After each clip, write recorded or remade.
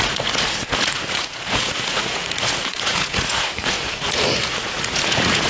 remade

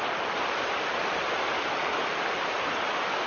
recorded